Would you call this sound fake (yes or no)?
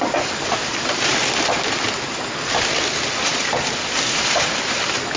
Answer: no